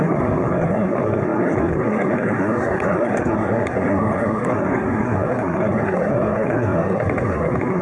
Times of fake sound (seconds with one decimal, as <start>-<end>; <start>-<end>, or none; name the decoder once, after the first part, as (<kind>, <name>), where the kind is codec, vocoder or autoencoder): 0.0-7.8 (codec, SNAC)